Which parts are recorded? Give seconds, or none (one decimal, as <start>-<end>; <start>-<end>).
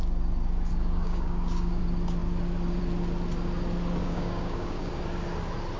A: 0.0-0.7; 1.8-4.0; 4.9-5.8